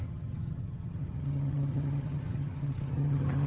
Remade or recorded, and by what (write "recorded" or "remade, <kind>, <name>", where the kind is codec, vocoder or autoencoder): remade, vocoder, HiFi-GAN